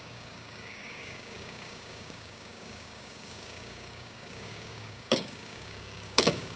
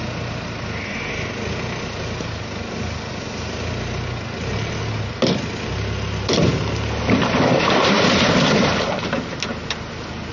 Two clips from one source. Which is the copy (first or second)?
first